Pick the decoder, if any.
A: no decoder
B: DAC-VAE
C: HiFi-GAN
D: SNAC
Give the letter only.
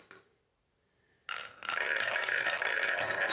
A